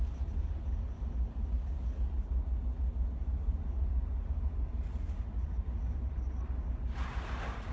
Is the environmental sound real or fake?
real